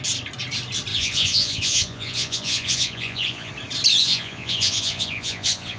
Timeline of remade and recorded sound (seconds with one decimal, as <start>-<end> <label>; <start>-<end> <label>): 0.0-0.9 recorded; 0.9-3.5 remade; 3.5-3.9 recorded; 3.9-5.8 remade